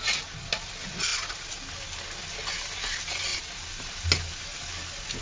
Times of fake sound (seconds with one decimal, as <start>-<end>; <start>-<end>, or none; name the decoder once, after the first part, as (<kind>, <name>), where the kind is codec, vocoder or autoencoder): 3.3-3.8 (vocoder, BigVGAN v2)